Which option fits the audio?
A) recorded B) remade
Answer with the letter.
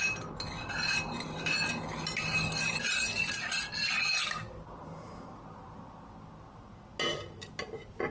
A